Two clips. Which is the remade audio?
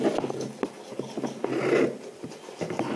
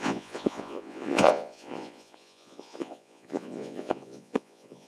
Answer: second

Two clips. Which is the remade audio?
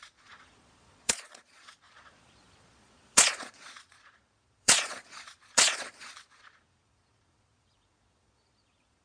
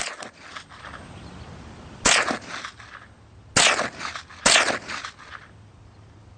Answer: first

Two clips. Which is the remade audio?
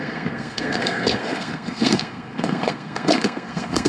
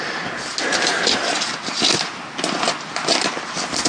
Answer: first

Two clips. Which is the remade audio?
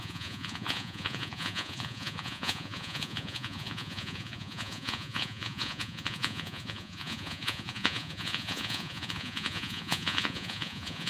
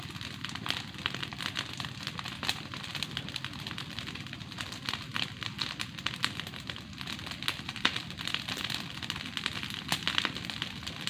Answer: first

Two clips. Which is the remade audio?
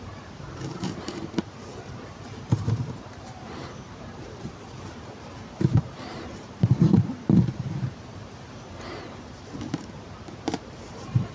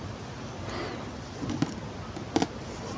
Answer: first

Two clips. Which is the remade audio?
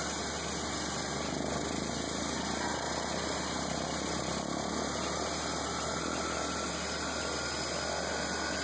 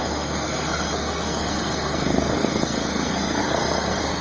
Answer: second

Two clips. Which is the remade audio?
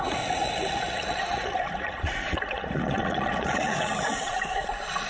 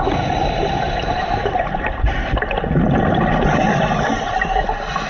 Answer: first